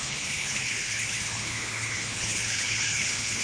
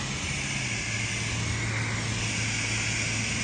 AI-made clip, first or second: first